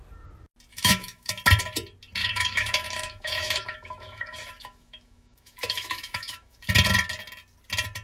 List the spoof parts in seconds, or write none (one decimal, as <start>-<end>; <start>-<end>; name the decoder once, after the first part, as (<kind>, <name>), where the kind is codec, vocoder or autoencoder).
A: 0.7-1.3 (autoencoder, DAC-VAE); 2.2-6.7